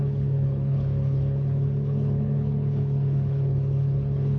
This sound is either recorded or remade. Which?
remade